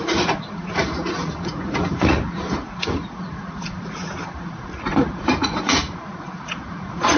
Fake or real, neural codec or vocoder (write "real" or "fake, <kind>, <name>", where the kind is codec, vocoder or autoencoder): fake, vocoder, Vocos